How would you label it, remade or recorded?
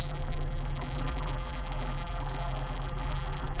remade